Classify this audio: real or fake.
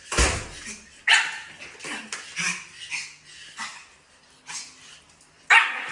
real